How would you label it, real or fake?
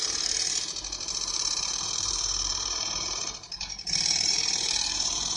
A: fake